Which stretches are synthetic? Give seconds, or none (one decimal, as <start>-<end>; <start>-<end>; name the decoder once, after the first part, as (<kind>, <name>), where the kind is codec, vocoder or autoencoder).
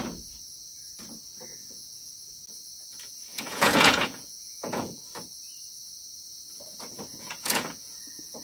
1.5-2.1 (vocoder, Vocos); 3.3-5.0; 7.1-8.4